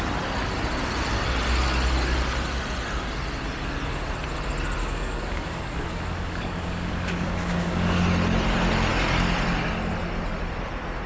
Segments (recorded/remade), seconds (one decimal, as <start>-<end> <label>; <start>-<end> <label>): 0.0-4.8 recorded; 4.8-8.0 remade; 8.0-11.1 recorded